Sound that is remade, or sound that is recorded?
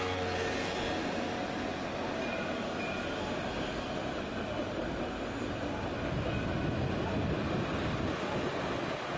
recorded